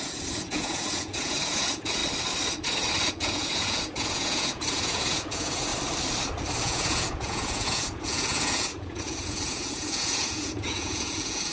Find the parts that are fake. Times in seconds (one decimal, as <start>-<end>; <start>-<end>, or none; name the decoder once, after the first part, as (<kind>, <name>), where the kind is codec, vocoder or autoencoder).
0.0-2.0 (vocoder, Vocos); 3.1-5.7; 6.6-11.5